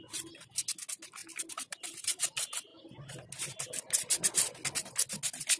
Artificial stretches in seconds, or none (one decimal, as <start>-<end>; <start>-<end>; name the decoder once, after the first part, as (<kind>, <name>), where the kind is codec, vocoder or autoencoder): 1.2-2.2 (vocoder, BigVGAN v2)